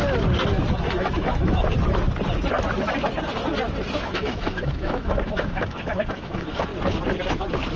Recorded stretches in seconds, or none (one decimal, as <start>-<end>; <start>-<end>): 0.0-0.7; 1.6-4.0; 6.7-7.8